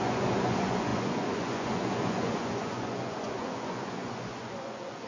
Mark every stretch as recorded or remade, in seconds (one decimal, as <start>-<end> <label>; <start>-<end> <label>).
0.0-5.1 remade